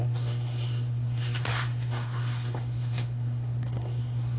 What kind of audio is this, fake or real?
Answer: fake